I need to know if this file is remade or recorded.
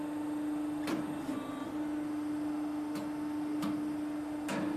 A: recorded